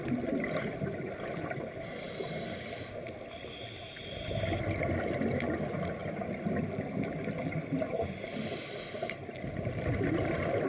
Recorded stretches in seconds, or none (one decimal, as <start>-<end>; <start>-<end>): 0.0-10.7